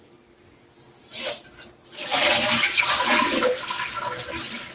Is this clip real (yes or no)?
yes